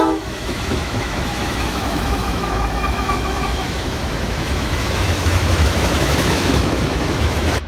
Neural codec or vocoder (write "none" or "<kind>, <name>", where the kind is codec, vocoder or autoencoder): autoencoder, DAC-VAE